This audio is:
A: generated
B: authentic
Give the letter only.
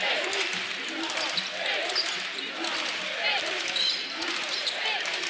B